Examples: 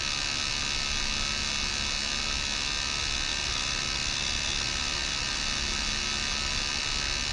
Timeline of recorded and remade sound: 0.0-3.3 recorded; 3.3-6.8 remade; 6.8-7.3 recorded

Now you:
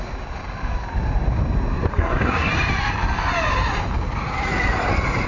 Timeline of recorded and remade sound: 0.0-1.9 recorded; 1.9-2.5 remade; 2.5-5.3 recorded